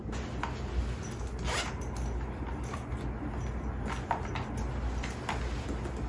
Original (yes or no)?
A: yes